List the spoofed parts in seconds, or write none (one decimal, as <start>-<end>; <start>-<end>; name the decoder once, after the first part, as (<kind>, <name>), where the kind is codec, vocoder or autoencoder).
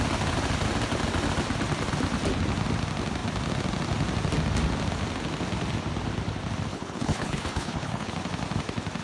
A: 6.7-8.1 (codec, HILCodec)